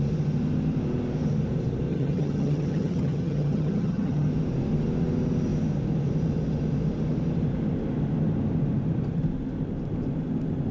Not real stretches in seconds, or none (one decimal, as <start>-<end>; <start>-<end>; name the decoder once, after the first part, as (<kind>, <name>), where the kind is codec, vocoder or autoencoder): 1.9-4.3 (vocoder, HiFi-GAN)